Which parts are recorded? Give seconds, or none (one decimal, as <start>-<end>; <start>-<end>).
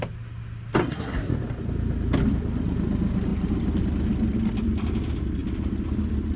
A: 0.0-0.8; 1.3-6.4